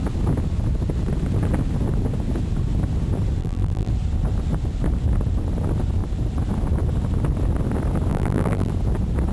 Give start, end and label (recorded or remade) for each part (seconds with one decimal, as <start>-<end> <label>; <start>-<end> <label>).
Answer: 0.0-3.4 recorded; 3.4-3.9 remade; 3.9-8.1 recorded; 8.1-8.7 remade; 8.7-9.3 recorded